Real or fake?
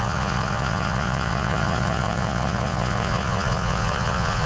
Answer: fake